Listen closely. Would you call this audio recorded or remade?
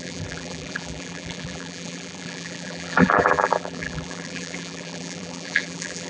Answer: remade